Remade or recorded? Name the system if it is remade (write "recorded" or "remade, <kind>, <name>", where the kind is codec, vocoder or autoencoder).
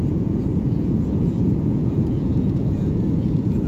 remade, vocoder, Vocos